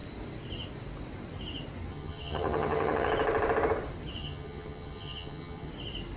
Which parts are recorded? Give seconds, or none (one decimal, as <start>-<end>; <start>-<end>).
0.0-1.9; 3.1-4.2; 5.7-6.2